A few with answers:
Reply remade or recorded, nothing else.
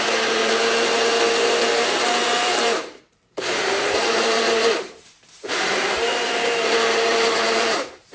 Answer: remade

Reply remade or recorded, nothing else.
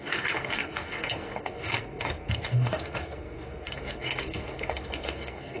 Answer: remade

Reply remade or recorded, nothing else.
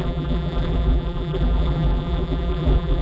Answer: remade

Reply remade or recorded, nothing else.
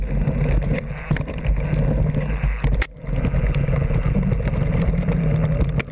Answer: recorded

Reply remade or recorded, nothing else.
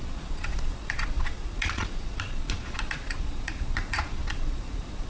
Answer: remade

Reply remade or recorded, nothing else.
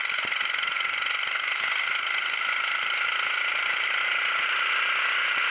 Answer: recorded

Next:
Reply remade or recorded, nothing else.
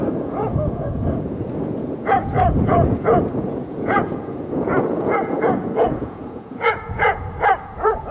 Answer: remade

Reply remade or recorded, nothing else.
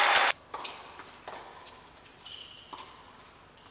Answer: recorded